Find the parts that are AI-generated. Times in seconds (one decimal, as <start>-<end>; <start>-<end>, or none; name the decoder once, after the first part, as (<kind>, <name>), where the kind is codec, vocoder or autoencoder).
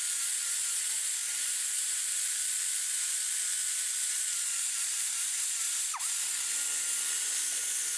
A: 1.2-2.1 (vocoder, BigVGAN v2); 4.3-6.0